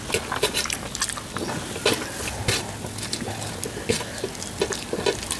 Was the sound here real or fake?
real